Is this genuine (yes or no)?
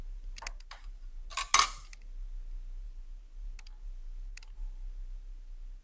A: yes